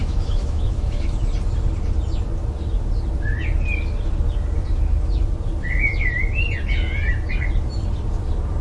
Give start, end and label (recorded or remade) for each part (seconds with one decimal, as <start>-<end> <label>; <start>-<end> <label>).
0.0-1.2 remade; 1.2-8.6 recorded